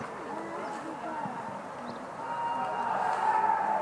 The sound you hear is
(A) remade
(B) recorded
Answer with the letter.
B